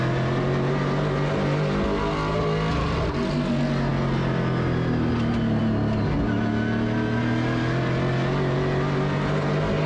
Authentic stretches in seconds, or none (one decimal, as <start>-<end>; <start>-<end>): 0.0-9.9